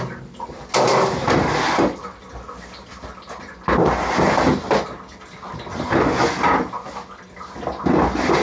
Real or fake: real